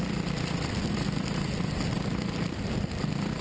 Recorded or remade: recorded